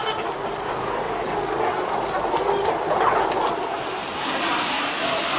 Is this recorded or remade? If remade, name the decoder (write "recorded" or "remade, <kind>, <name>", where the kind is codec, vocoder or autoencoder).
recorded